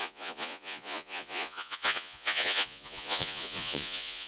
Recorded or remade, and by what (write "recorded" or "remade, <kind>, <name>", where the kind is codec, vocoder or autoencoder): remade, vocoder, Vocos